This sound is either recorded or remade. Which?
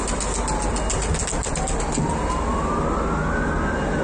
recorded